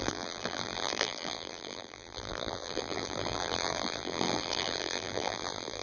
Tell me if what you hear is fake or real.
fake